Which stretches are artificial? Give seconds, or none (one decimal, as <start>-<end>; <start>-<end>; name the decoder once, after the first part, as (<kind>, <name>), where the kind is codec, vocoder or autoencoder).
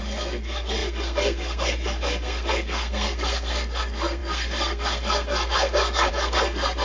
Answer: 0.0-6.8 (codec, SNAC)